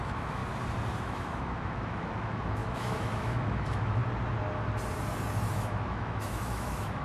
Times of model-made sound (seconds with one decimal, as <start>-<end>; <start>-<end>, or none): 0.0-0.4; 1.0-4.0; 5.5-7.0